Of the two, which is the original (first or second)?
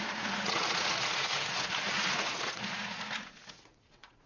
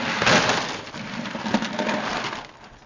second